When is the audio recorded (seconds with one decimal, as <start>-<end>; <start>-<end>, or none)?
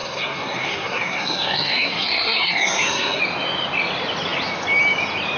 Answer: 3.2-5.4